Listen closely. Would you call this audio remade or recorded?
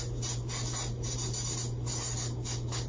recorded